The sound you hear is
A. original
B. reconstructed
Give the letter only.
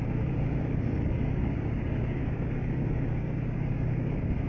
B